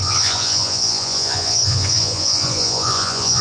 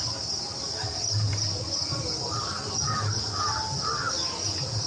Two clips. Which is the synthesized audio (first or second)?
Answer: first